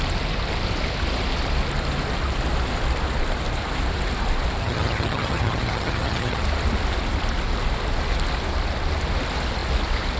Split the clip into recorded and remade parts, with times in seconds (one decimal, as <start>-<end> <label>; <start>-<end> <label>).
0.0-4.6 recorded; 4.6-6.4 remade; 6.4-10.2 recorded